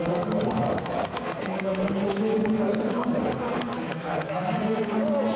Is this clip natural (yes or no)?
no